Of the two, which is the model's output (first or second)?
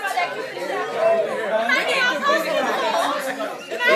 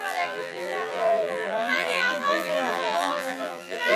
second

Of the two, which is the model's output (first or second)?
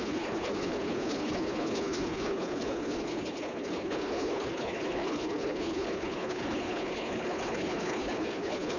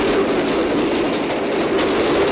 first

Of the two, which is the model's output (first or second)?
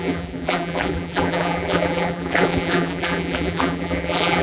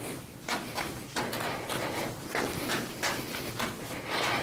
first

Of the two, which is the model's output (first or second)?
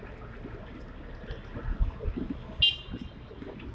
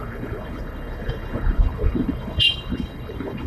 second